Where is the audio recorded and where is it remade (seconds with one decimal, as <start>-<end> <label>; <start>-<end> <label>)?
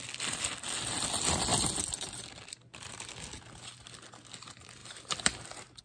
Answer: 0.0-5.8 recorded